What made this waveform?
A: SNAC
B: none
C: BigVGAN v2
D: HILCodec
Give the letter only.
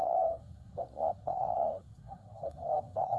A